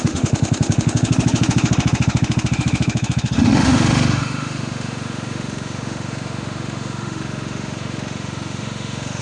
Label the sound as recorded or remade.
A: remade